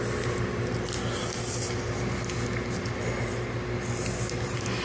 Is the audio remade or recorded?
recorded